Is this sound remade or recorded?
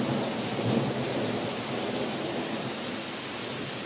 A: recorded